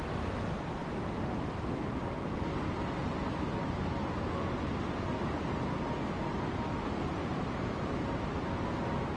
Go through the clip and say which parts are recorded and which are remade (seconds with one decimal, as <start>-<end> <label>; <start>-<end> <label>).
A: 0.0-9.2 recorded